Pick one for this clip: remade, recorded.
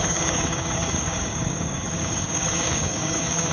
remade